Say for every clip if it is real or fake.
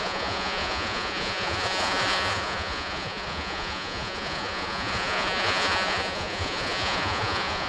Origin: fake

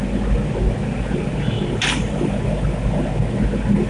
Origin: real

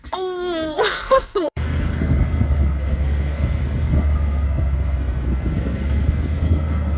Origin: fake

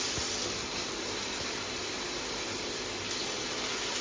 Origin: real